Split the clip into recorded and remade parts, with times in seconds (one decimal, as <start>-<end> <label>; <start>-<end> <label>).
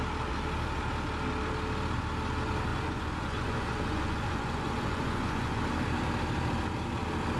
0.0-2.7 recorded; 2.7-5.6 remade; 5.6-7.4 recorded